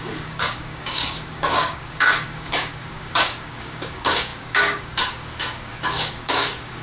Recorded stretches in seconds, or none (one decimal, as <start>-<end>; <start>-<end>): none

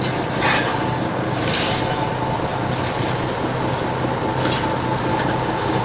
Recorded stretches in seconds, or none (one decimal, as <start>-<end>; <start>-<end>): 0.0-0.7; 1.8-5.1

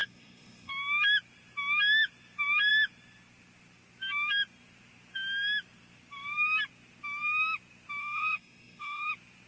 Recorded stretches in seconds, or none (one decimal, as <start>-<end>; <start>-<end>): 0.7-8.0; 9.1-9.5

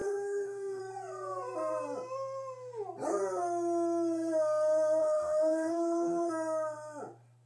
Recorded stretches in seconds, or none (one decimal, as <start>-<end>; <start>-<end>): 0.8-5.0; 6.3-7.5